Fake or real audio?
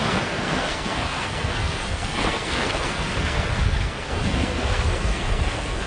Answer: fake